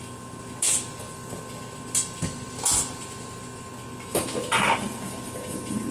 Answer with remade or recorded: recorded